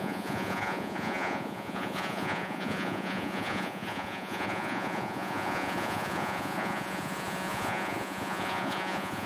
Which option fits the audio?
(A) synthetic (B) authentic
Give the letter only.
A